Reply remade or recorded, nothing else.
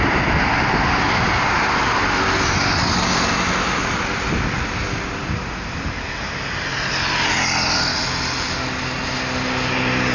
recorded